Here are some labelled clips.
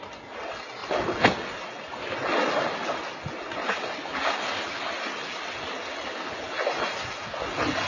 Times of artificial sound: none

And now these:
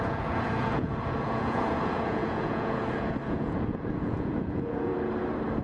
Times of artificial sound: 0.0-4.9 (vocoder, Vocos)

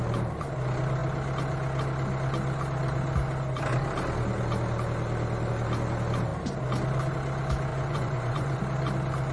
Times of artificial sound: 7.7-8.6 (vocoder, Vocos)